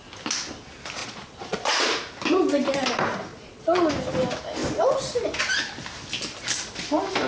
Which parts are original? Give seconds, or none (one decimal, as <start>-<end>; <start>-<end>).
0.0-1.0; 1.9-3.3; 3.9-7.3